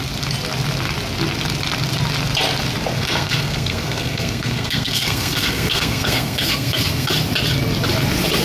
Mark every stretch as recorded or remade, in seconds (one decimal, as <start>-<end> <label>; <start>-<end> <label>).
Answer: 0.0-2.9 recorded; 2.9-7.1 remade; 7.1-8.4 recorded